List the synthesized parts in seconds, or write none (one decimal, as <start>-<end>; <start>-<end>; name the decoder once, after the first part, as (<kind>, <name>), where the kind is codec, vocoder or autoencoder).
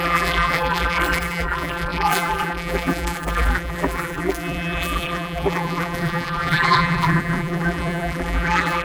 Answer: 0.0-8.8 (vocoder, BigVGAN v2)